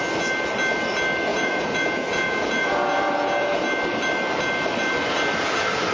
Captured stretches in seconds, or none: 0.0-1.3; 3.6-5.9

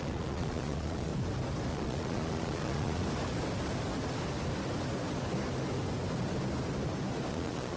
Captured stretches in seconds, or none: 1.1-1.7; 3.0-7.3

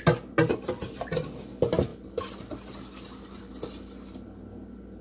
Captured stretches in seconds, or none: 0.0-5.0

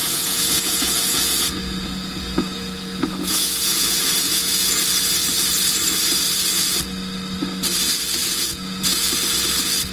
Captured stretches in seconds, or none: 4.7-8.2; 9.1-9.9

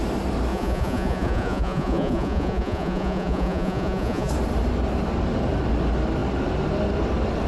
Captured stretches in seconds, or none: 0.0-0.5; 4.3-7.5

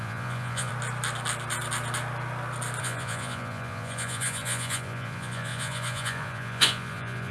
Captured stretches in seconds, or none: 0.7-2.8

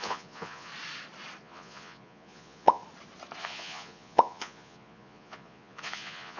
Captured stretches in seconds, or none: 0.7-1.4; 2.8-3.4

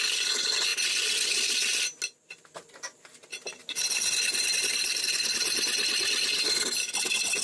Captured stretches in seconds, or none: 0.0-7.4